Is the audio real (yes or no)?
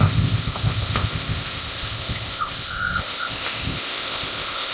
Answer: no